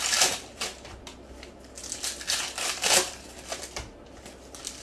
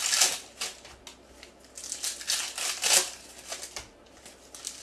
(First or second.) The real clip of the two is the second